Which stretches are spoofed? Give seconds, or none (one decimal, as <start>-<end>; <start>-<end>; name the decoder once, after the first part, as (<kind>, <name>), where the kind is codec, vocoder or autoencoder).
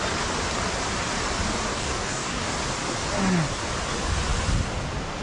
1.7-2.5 (codec, DAC)